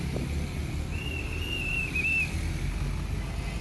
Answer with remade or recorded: recorded